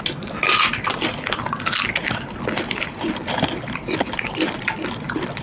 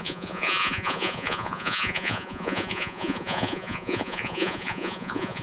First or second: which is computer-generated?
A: second